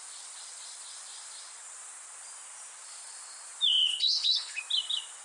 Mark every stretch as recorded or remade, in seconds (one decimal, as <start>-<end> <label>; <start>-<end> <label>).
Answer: 0.0-3.9 recorded; 3.9-4.6 remade; 4.6-5.2 recorded